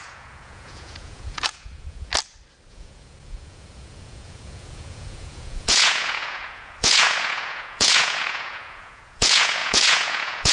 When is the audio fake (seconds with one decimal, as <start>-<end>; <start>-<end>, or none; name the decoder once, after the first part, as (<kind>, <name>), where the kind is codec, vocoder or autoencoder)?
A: 0.0-2.1 (vocoder, Vocos); 2.7-10.5